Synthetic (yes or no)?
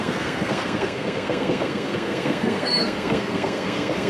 yes